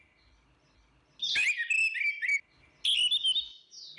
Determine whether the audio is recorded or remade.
recorded